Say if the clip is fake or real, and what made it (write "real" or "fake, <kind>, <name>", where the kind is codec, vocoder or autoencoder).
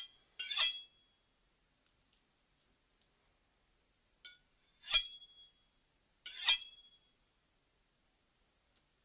real